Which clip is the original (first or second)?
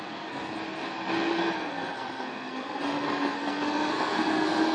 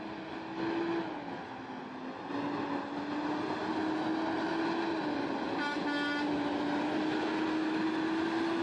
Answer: second